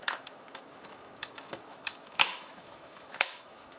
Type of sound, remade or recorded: remade